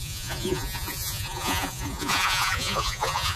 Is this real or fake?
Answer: fake